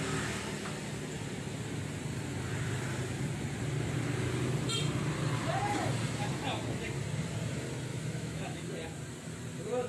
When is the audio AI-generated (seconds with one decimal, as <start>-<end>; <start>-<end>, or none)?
7.9-8.7